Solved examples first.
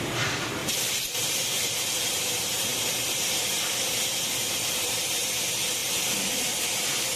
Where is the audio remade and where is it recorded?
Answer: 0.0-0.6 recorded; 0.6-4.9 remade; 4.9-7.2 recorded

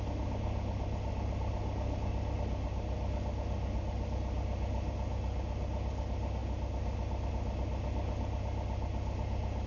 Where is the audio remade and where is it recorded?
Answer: 0.0-9.7 recorded

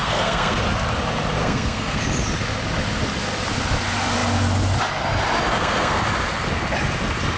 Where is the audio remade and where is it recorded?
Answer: 0.0-0.6 remade; 0.6-1.4 recorded; 1.4-2.0 remade; 2.0-5.5 recorded; 5.5-6.0 remade; 6.0-7.4 recorded